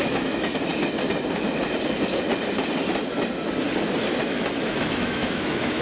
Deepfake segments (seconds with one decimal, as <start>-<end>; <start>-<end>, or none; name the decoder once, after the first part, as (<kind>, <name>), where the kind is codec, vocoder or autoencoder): 0.0-0.7 (autoencoder, DAC-VAE); 4.2-5.8